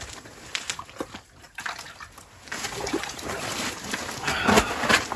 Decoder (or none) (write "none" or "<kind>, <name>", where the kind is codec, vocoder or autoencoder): none